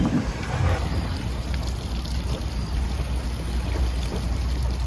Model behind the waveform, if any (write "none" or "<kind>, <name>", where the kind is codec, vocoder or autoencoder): none